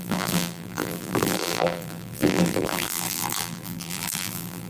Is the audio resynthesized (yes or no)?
yes